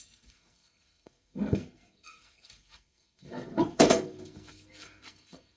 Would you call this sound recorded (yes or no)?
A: no